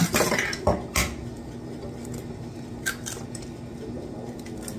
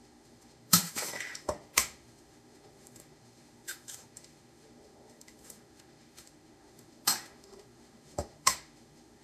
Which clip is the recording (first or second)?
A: first